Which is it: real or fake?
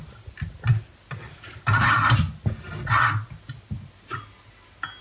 real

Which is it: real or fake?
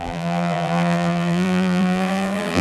fake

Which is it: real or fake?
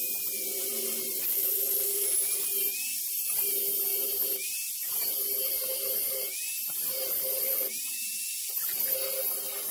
real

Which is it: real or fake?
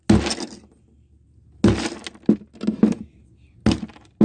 real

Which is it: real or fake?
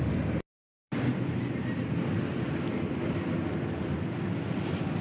fake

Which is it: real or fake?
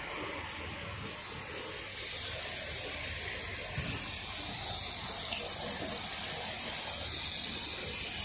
real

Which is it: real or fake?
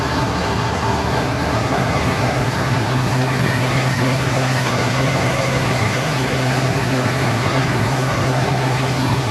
fake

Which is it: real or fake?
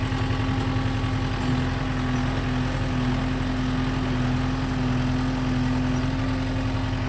real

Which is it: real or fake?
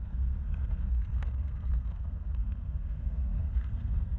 fake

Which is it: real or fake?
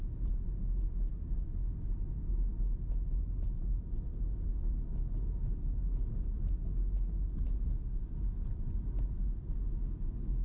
real